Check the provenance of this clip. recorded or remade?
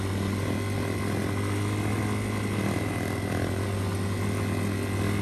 recorded